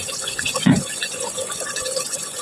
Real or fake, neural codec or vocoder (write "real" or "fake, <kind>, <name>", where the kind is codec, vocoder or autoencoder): fake, vocoder, Vocos